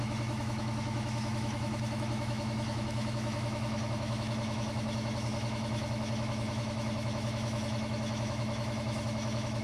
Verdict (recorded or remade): remade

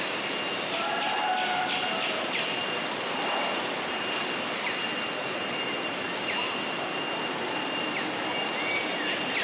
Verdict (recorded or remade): recorded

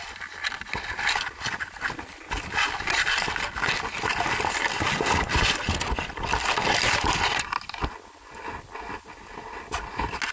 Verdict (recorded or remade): recorded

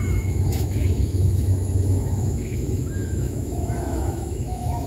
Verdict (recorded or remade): remade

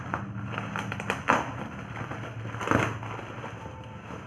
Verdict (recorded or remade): recorded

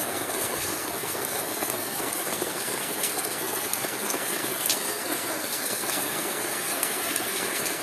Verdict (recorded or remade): remade